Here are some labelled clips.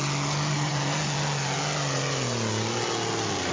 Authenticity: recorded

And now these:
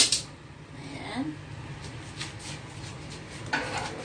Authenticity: recorded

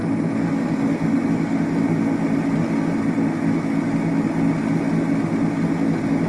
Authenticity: recorded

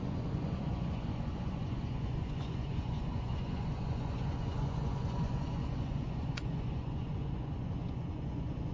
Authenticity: remade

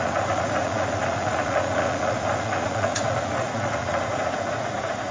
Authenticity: remade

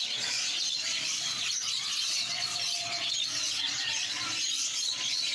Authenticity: remade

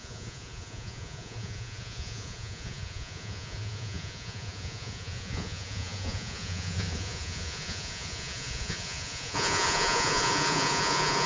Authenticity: remade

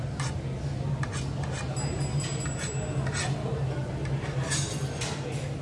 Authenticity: recorded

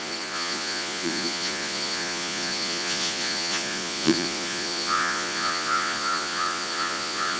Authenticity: remade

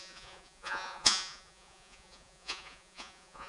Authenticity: remade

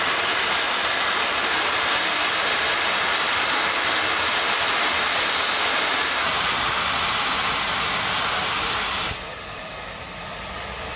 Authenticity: recorded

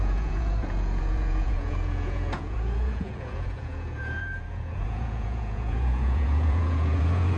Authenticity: remade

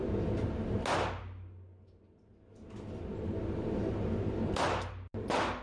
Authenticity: recorded